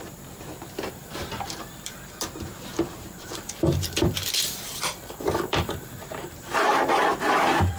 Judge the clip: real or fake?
fake